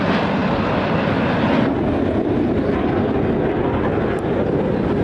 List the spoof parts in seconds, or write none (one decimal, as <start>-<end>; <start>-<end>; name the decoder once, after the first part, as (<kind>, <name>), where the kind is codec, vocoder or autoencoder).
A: 0.4-1.5 (vocoder, BigVGAN v2)